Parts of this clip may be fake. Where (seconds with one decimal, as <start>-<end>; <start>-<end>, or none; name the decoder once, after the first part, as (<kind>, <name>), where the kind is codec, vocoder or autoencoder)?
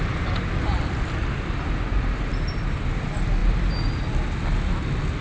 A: none